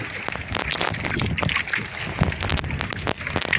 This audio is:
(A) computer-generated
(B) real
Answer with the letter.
B